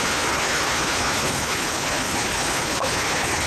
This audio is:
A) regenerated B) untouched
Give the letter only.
A